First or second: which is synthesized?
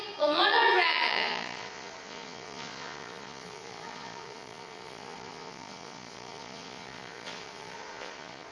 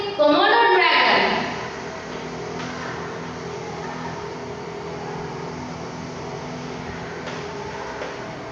first